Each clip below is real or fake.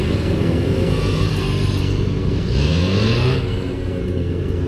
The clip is fake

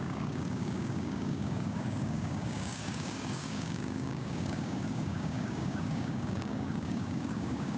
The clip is fake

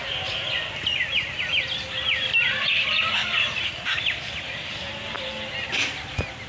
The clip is real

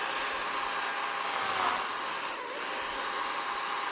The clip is real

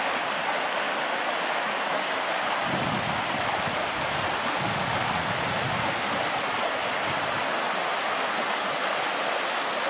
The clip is real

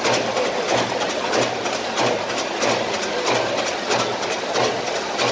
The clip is real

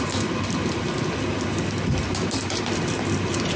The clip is real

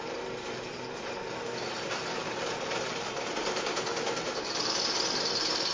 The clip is fake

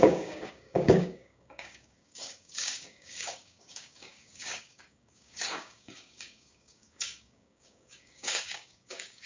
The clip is fake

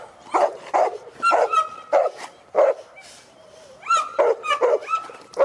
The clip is real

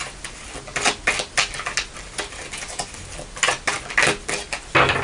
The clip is real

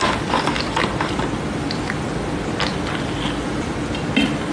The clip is real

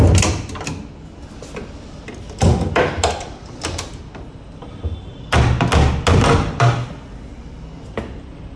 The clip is real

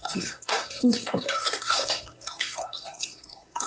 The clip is fake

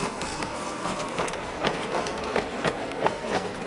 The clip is fake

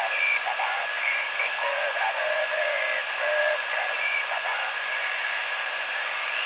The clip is fake